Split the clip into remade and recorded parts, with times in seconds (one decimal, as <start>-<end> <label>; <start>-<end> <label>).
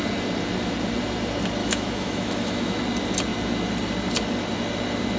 0.0-1.6 recorded; 1.6-2.8 remade; 2.8-5.2 recorded